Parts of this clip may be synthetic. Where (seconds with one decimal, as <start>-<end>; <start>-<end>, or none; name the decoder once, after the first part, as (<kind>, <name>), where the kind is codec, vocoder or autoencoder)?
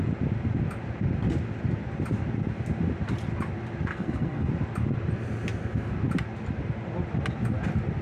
3.9-4.5 (codec, SNAC)